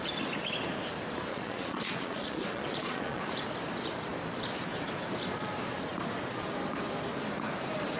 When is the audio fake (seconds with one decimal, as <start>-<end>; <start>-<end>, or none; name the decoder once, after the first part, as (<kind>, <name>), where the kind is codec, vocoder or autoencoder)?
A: 1.3-3.2 (vocoder, Vocos)

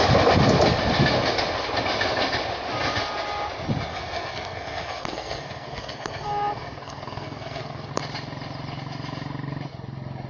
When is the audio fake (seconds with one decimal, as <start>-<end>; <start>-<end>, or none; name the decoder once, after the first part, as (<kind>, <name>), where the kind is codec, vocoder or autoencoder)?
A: 3.9-7.9 (codec, SNAC)

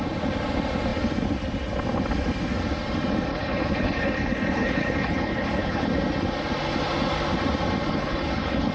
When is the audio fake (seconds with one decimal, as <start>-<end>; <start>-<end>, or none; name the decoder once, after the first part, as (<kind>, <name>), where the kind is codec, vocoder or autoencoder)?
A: 3.3-5.9 (codec, HILCodec); 7.9-8.7

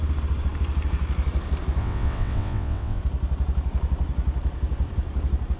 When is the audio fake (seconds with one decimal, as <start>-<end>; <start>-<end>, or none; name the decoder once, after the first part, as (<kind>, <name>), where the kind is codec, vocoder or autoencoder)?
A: 1.8-3.0 (vocoder, WaveNeXt)

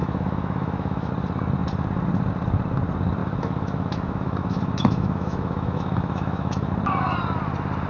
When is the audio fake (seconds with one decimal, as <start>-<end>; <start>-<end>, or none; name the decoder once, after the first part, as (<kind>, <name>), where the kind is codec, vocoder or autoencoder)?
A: 0.0-1.1 (autoencoder, DAC-VAE); 3.2-6.7

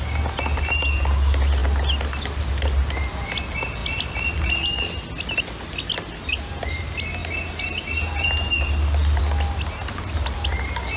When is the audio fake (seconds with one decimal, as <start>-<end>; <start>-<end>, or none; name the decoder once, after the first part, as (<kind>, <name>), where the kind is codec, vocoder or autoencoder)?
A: none

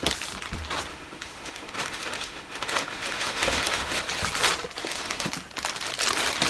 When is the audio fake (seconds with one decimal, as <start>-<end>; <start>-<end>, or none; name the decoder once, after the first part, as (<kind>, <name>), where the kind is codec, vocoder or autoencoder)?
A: 0.9-4.0 (autoencoder, DAC-VAE); 4.8-5.3